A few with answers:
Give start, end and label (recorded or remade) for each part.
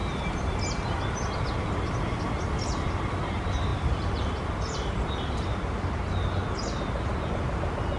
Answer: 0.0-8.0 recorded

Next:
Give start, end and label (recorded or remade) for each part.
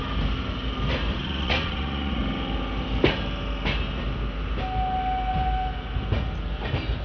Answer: 0.0-1.2 recorded; 1.2-2.2 remade; 2.2-7.0 recorded